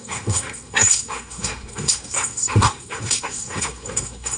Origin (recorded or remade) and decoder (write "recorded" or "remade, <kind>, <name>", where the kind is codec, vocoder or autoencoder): remade, codec, SNAC